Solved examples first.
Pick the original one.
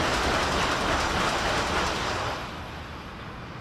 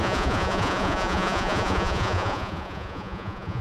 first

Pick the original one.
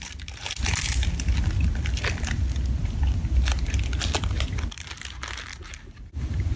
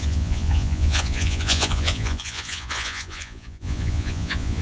first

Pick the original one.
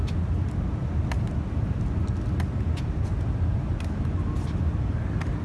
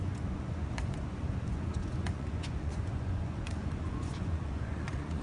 first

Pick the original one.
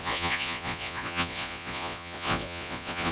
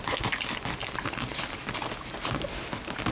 second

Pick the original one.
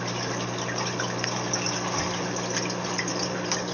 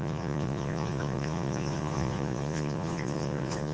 first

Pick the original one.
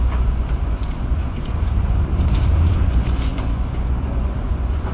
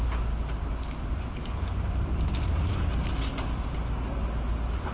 second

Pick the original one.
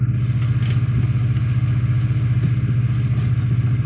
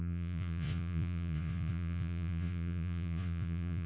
first